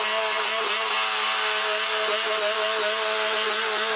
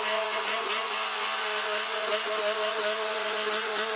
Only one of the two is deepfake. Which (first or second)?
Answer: second